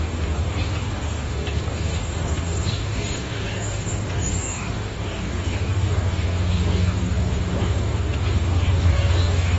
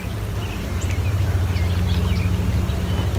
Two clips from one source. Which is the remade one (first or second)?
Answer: first